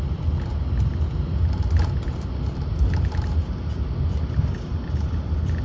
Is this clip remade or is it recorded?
recorded